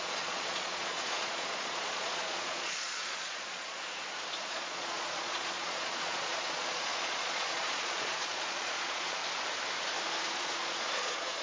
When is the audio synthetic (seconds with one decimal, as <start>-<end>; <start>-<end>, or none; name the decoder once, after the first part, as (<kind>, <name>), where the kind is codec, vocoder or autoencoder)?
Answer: 0.0-3.8 (vocoder, Vocos); 4.4-9.2; 10.3-11.4